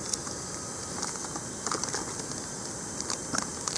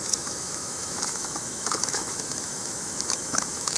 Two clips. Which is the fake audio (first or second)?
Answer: second